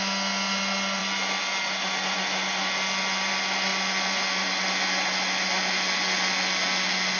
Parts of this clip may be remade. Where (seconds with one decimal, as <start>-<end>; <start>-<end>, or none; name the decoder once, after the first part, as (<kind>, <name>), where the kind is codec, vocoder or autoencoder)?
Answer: none